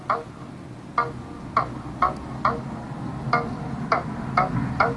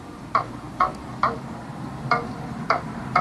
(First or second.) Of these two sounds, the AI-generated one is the second